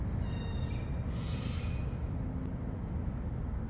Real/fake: real